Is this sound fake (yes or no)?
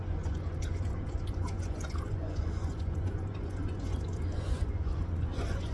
yes